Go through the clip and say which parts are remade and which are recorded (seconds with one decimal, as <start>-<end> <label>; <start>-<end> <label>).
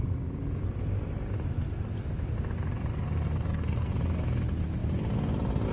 0.0-2.9 recorded; 2.9-3.9 remade; 3.9-5.7 recorded